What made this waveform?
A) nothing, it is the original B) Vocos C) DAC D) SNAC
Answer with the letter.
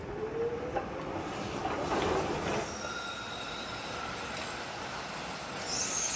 A